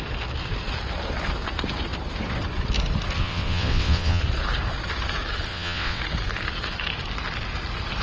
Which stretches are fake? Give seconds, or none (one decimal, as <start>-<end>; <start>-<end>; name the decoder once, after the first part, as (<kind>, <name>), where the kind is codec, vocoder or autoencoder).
3.2-4.2 (vocoder, WaveNeXt); 5.5-6.0